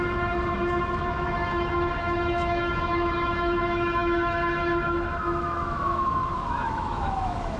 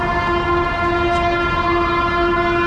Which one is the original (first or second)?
second